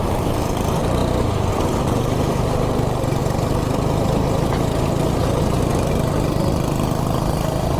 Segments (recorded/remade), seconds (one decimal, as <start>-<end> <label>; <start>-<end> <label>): 0.0-1.0 remade; 1.0-1.5 recorded; 1.5-3.2 remade; 3.2-7.8 recorded